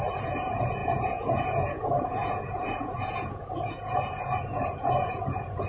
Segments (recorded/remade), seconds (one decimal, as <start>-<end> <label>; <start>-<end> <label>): 0.0-5.7 remade